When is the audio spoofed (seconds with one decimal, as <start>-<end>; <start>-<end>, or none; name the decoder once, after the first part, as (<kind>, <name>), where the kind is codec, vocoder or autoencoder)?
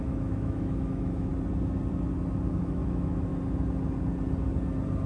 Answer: 0.0-1.3 (autoencoder, DAC-VAE); 2.6-3.3